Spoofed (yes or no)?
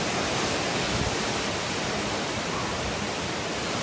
no